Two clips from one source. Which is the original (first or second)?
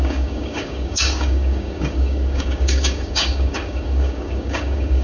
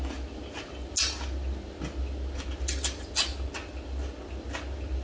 second